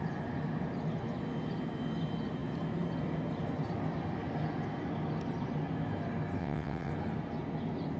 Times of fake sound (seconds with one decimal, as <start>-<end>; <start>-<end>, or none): 6.4-6.9